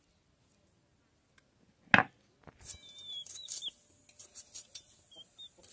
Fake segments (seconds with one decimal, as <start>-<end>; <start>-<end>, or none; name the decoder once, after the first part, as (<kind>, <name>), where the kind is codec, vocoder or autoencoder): none